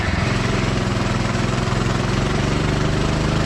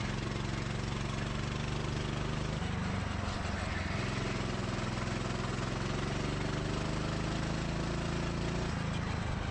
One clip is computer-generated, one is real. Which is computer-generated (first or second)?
first